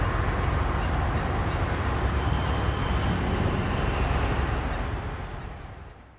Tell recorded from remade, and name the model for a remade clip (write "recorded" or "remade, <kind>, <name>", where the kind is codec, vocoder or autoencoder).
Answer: recorded